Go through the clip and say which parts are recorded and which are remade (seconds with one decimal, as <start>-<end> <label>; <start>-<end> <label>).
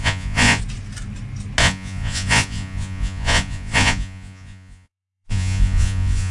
0.0-0.6 remade; 0.6-1.6 recorded; 1.6-6.3 remade